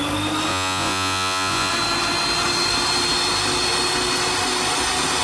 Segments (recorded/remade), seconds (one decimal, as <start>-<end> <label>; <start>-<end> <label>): 0.0-0.5 recorded; 0.5-1.7 remade; 1.7-5.2 recorded